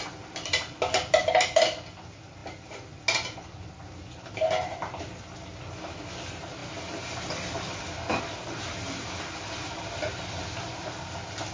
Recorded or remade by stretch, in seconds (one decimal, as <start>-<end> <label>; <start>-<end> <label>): 0.0-11.5 recorded